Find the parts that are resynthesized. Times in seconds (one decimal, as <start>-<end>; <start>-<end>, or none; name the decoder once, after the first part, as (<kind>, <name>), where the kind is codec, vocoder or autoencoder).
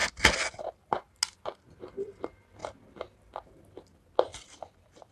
4.3-5.1 (vocoder, BigVGAN v2)